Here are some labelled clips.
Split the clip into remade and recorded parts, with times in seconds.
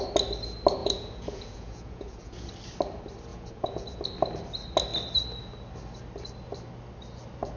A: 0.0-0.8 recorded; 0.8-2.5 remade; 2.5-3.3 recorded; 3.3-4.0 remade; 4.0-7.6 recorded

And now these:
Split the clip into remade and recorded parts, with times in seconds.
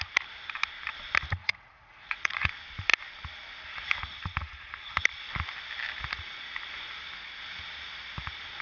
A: 0.0-1.4 recorded; 1.4-2.5 remade; 2.5-8.6 recorded